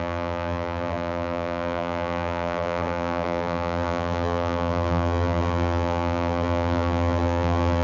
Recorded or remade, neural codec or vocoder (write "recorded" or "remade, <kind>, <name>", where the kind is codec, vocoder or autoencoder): remade, vocoder, BigVGAN v2